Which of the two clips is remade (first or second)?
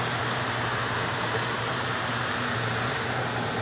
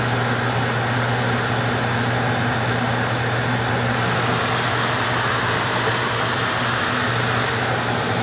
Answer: first